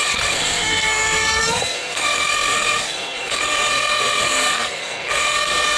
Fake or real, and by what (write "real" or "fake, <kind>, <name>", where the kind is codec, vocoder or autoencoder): fake, codec, SNAC